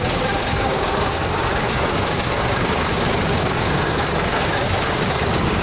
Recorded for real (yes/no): no